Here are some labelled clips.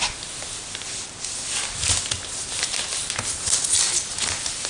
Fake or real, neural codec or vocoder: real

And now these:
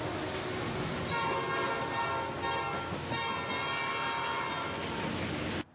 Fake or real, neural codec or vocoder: real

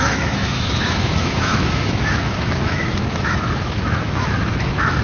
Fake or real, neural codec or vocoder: fake, autoencoder, DAC-VAE